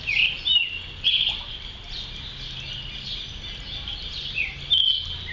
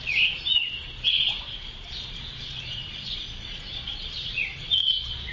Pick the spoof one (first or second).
second